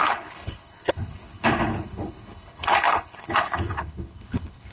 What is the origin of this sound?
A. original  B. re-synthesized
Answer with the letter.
B